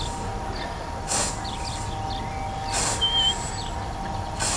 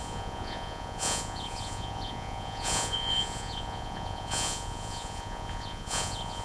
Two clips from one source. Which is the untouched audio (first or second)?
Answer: first